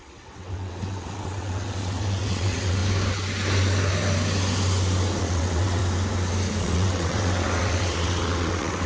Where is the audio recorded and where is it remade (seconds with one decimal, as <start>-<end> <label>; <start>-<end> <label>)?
0.0-2.8 remade; 2.8-5.2 recorded; 5.2-5.8 remade; 5.8-6.6 recorded; 6.6-8.9 remade